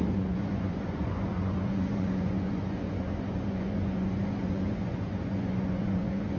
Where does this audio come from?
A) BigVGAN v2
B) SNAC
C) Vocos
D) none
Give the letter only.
C